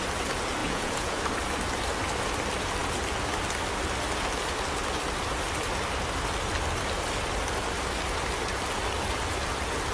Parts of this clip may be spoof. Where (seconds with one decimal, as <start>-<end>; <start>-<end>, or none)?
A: 0.6-1.2